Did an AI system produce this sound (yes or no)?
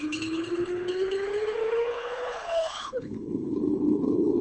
yes